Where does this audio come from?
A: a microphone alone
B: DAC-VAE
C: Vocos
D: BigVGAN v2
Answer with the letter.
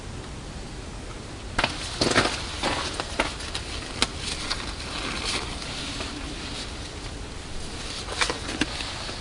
A